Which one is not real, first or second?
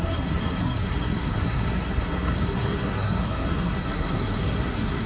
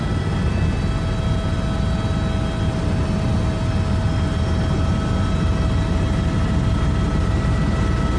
first